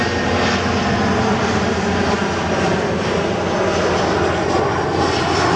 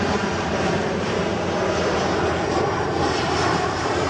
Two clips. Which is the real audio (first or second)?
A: first